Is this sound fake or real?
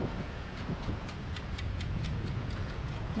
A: fake